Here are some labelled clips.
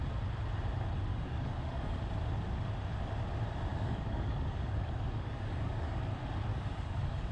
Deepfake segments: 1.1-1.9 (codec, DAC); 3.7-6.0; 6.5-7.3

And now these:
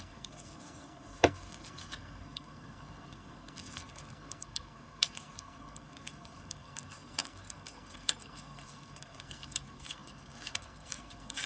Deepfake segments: 0.0-11.5 (codec, SNAC)

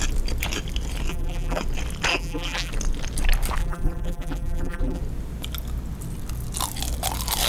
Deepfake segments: 1.1-1.6 (vocoder, BigVGAN v2); 2.1-2.7; 3.6-5.0

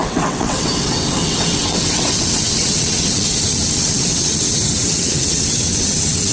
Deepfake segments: 0.0-6.3 (vocoder, WaveNeXt)

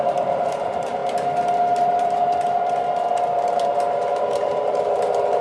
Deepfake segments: 0.0-1.0 (vocoder, BigVGAN v2); 4.2-5.4

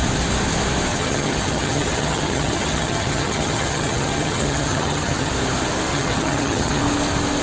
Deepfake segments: 0.9-5.3 (vocoder, HiFi-GAN); 5.9-6.8

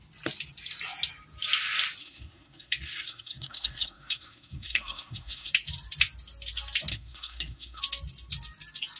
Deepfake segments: 2.0-5.5 (codec, SNAC); 6.9-7.8

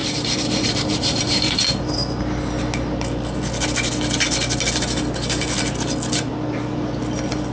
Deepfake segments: 0.0-1.6 (vocoder, BigVGAN v2)